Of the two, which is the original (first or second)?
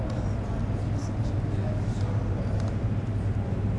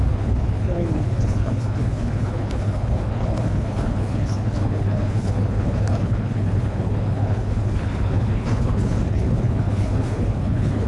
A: first